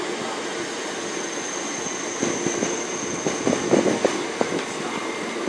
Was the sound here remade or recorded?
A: recorded